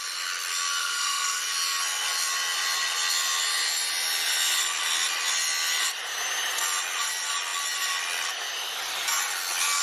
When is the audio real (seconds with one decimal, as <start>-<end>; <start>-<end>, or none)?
0.0-0.8; 1.4-9.8

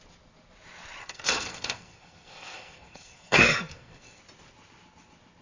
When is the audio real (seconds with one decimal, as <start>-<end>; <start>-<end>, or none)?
0.0-1.0; 4.2-5.4

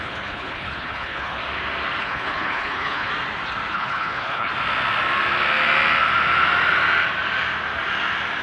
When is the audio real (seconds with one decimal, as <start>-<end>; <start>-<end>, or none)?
1.4-2.0; 3.1-3.7; 4.5-8.4

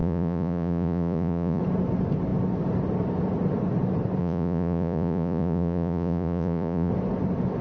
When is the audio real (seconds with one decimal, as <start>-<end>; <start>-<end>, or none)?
1.6-4.2; 6.9-7.6

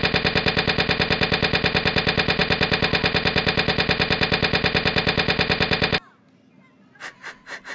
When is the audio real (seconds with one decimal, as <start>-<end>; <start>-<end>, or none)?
0.0-7.7

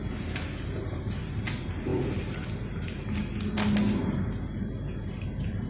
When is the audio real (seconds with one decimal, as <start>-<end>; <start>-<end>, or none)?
0.0-5.7

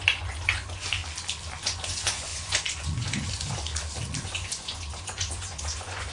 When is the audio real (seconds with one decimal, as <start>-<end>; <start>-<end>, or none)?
1.0-1.6; 3.7-4.2